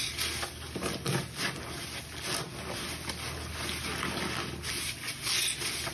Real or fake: real